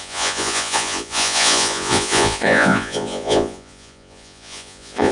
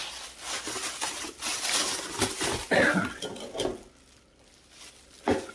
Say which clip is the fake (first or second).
first